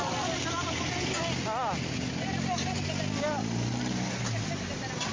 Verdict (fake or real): real